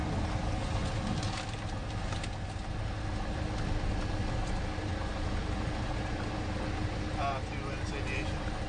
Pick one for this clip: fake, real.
real